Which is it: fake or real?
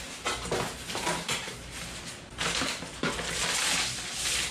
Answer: real